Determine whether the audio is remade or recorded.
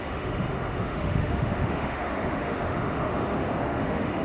remade